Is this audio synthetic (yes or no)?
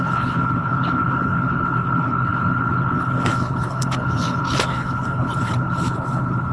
yes